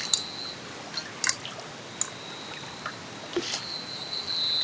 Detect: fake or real real